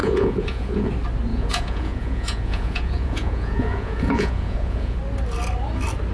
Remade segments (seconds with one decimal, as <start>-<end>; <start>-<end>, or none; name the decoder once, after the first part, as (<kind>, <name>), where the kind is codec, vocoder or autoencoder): 0.0-0.9 (vocoder, Vocos); 1.3-5.0